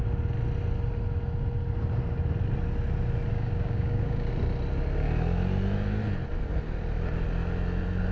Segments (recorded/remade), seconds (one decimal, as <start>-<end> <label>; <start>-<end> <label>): 0.0-3.3 recorded; 3.3-4.3 remade; 4.3-8.1 recorded